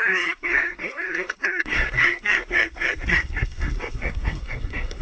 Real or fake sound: fake